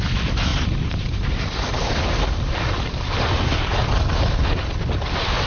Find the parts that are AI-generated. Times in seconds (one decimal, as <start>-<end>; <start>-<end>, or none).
0.5-1.4